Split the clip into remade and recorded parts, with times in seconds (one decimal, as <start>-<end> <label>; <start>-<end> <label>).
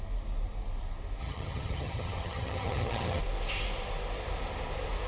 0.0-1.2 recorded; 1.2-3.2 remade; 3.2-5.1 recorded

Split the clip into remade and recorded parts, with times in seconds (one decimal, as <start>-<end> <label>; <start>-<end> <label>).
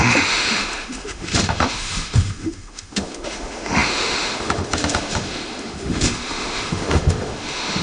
0.0-7.8 remade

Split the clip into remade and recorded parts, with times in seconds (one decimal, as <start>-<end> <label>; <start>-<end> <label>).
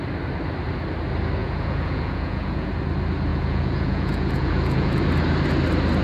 0.0-1.4 recorded; 1.4-2.7 remade; 2.7-3.3 recorded; 3.3-5.0 remade; 5.0-6.0 recorded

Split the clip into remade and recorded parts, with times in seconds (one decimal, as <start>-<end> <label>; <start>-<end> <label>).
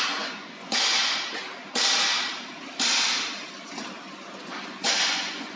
0.0-1.0 remade; 1.0-4.4 recorded; 4.4-5.6 remade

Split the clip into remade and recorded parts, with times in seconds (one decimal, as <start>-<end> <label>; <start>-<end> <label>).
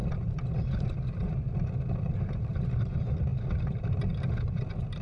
0.0-5.0 recorded